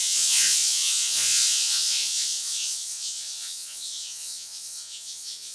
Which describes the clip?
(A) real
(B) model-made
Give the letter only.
B